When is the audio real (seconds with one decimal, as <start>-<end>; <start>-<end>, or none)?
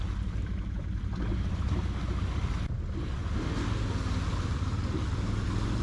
0.0-5.8